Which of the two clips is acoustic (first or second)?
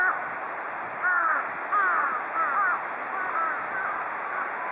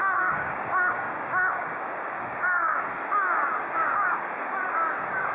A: first